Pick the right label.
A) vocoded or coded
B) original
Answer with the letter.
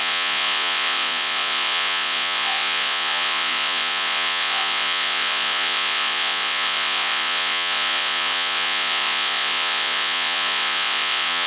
A